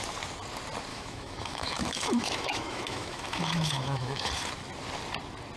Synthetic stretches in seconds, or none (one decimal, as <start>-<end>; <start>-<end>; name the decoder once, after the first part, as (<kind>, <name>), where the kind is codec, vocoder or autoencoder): 0.9-4.3 (autoencoder, DAC-VAE)